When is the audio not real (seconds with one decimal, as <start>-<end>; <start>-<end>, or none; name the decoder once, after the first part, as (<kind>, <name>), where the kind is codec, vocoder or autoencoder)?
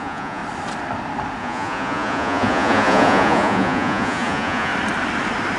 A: 0.0-0.4 (vocoder, Vocos); 1.4-4.7